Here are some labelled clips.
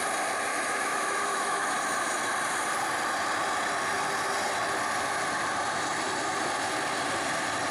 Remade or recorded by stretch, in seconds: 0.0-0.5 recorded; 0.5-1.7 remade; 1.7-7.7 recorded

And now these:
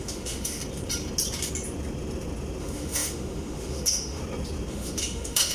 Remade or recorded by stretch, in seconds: 0.0-0.6 remade; 0.6-2.6 recorded; 2.6-4.2 remade; 4.2-4.7 recorded; 4.7-5.5 remade